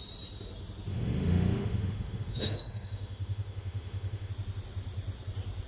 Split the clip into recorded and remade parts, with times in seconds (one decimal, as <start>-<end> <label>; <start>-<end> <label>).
0.0-0.9 recorded; 0.9-4.3 remade; 4.3-5.7 recorded